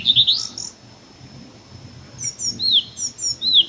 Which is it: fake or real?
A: real